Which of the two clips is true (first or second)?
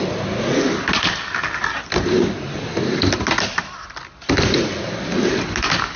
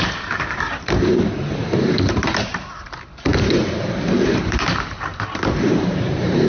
first